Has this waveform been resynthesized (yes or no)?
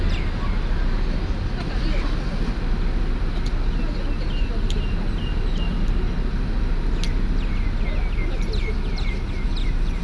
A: no